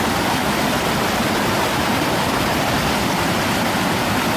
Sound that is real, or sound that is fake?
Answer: fake